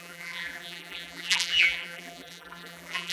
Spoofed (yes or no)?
yes